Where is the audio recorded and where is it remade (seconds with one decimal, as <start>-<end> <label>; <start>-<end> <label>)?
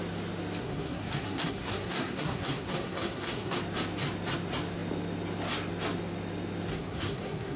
0.0-0.6 recorded; 0.6-3.6 remade; 3.6-6.7 recorded; 6.7-7.6 remade